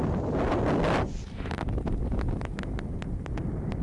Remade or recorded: recorded